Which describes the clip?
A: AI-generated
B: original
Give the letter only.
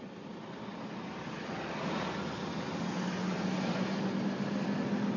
B